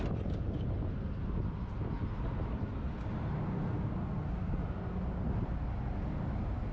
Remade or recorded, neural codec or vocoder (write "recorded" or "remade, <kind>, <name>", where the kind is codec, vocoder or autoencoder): recorded